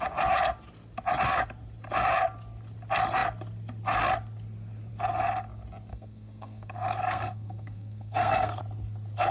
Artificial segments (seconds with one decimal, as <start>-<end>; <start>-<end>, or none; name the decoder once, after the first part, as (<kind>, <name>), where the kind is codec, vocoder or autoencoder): 5.9-8.6 (codec, SNAC)